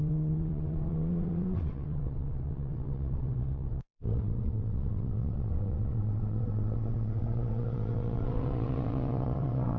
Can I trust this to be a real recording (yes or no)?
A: no